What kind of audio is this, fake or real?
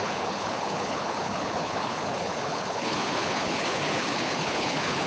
fake